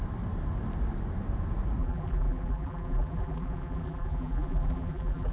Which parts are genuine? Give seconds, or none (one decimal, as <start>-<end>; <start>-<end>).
0.0-1.8

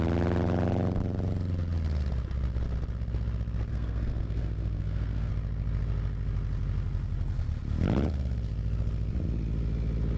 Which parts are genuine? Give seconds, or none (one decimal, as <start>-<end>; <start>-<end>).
0.0-3.7; 5.3-10.2

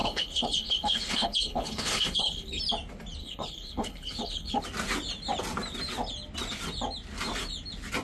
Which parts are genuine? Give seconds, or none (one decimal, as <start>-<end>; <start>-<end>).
2.6-3.2; 4.6-8.0

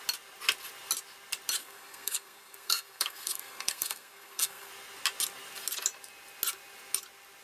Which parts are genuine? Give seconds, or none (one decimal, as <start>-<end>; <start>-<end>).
0.0-1.6; 4.7-7.4

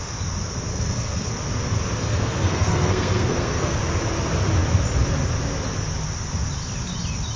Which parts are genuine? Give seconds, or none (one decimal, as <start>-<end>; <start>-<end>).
0.0-0.7; 1.3-2.0; 3.8-7.4

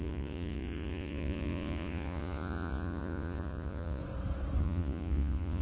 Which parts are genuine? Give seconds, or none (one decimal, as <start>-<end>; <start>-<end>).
4.0-4.6